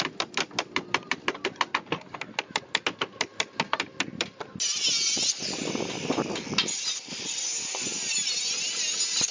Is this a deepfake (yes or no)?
no